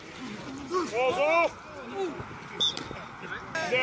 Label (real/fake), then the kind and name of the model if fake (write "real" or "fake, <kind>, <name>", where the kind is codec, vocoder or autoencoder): real